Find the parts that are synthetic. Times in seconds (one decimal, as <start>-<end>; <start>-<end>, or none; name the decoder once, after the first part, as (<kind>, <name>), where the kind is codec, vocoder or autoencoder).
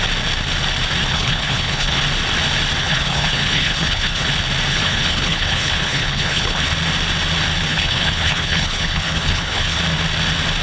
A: 1.0-2.0 (codec, HILCodec); 2.8-4.3; 4.7-6.7; 7.7-9.8